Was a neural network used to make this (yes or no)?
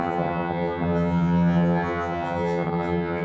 yes